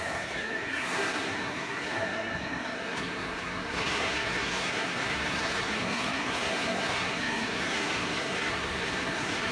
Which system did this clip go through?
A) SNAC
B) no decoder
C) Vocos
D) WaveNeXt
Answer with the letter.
A